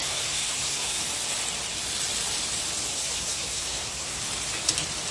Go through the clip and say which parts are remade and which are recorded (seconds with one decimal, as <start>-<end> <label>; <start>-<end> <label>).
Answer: 0.0-1.0 remade; 1.0-2.9 recorded; 2.9-4.2 remade; 4.2-5.1 recorded